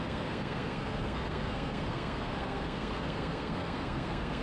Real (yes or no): no